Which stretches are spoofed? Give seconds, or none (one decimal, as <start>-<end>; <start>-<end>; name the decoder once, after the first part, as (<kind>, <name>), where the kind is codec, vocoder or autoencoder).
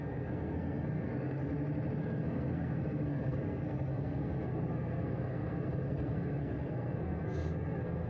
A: 0.0-1.4 (codec, SNAC); 2.0-8.1